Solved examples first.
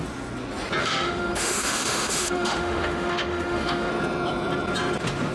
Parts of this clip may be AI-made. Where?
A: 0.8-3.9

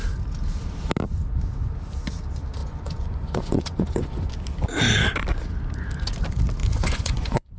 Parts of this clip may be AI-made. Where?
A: 2.6-4.3; 6.6-7.6

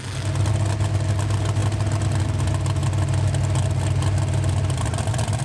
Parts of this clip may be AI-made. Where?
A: none